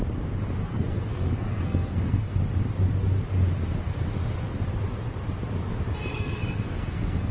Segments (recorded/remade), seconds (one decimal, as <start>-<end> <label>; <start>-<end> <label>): 0.0-0.6 recorded; 0.6-2.4 remade; 2.4-6.1 recorded; 6.1-7.3 remade